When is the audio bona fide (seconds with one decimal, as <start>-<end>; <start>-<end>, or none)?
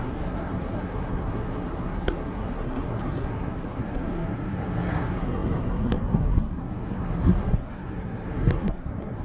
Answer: none